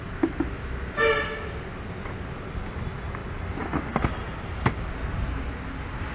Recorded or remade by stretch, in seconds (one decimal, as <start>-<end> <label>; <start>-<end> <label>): 0.0-6.1 recorded